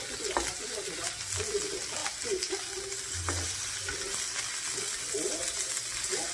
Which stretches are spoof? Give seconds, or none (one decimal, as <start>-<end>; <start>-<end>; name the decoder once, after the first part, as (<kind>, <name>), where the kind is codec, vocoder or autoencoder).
none